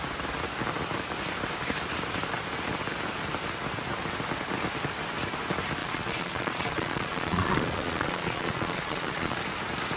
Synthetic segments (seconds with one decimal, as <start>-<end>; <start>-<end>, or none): 5.8-9.4